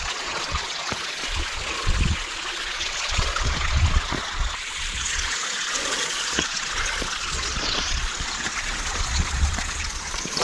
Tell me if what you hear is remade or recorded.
remade